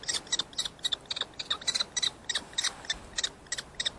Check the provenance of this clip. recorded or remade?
recorded